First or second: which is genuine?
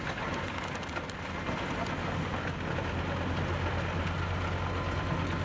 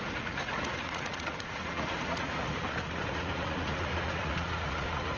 first